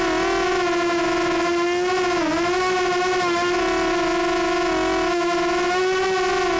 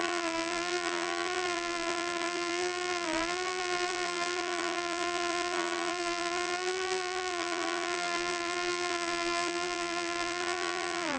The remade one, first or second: second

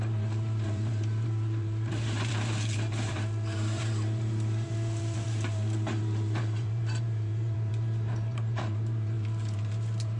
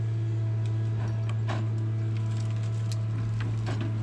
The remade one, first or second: first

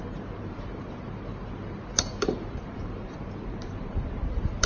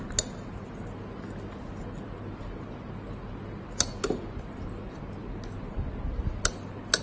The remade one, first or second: first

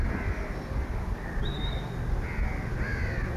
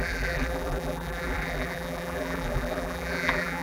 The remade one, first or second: second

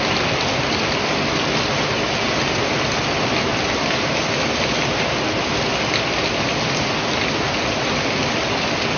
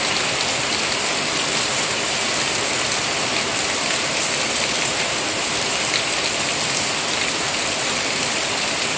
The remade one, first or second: second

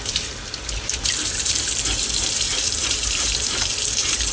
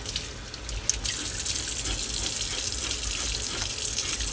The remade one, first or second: first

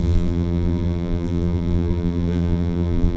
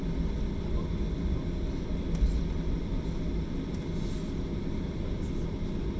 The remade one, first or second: first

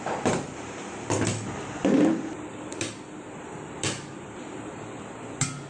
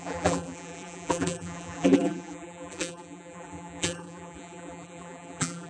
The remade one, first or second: second